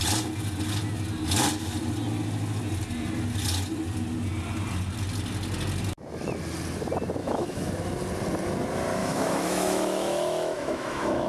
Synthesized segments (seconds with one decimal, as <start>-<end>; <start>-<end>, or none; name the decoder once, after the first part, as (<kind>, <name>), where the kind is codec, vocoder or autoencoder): 7.2-7.7 (autoencoder, DAC-VAE); 9.0-11.3